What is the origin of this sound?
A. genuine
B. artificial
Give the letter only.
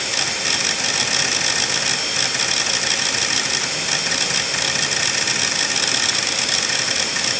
A